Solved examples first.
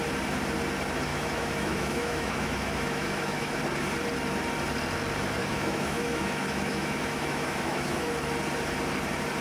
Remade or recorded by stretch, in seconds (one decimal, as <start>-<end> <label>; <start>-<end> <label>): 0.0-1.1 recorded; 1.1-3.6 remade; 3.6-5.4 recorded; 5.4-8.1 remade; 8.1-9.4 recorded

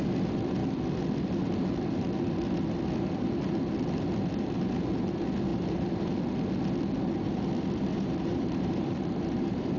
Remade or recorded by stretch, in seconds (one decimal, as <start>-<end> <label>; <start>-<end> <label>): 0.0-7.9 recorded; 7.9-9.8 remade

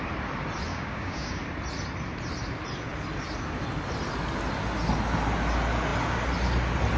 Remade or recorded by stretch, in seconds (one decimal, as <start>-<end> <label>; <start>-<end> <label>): 0.0-0.7 recorded; 0.7-1.4 remade; 1.4-7.0 recorded